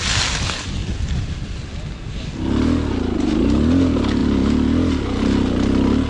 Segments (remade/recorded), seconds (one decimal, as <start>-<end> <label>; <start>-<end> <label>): 0.0-6.1 recorded